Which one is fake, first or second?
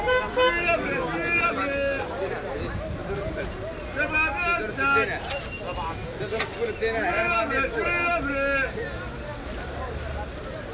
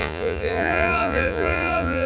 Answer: second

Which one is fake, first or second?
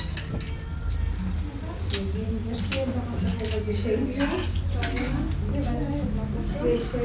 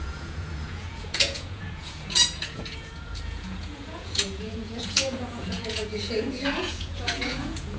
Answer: second